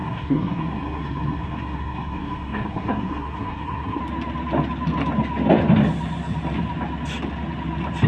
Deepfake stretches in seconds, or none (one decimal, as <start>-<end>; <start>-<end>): 0.0-4.0